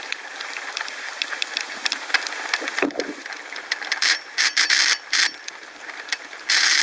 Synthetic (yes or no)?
no